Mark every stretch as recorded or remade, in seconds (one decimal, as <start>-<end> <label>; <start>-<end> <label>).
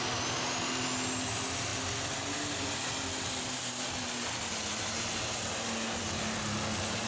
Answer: 0.0-7.1 recorded